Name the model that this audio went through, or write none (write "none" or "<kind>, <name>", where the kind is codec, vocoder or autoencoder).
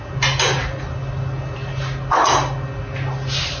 none